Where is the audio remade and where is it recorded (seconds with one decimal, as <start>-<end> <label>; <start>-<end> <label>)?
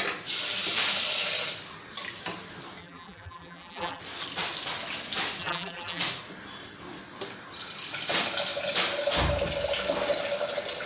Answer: 0.0-2.8 recorded; 2.8-4.0 remade; 4.0-5.4 recorded; 5.4-6.0 remade; 6.0-10.9 recorded